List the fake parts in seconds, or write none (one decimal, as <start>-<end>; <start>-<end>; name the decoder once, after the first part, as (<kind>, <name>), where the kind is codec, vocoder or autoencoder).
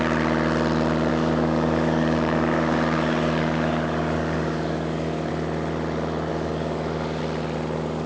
1.1-5.3 (codec, DAC); 6.3-7.2